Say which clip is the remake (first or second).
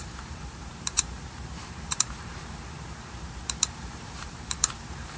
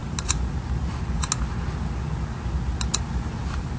first